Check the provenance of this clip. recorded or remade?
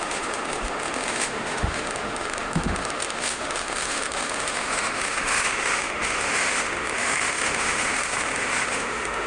remade